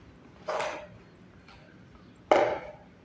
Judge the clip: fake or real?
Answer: real